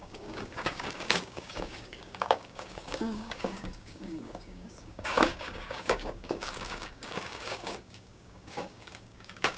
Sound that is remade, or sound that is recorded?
remade